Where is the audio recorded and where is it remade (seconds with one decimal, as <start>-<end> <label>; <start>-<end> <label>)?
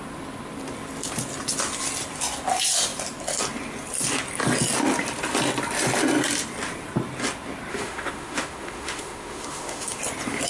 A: 0.0-7.7 recorded; 7.7-10.0 remade; 10.0-10.5 recorded